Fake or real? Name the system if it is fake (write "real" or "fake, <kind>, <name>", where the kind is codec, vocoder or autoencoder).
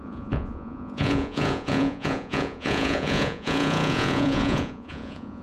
fake, vocoder, Vocos